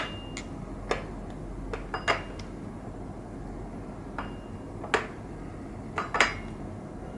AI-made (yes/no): no